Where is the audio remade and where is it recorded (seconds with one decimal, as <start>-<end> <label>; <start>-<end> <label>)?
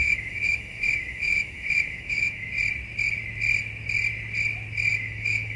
0.0-2.5 remade; 2.5-4.9 recorded; 4.9-5.6 remade